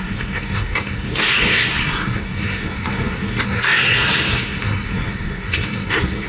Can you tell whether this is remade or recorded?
remade